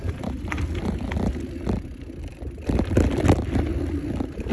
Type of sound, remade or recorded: recorded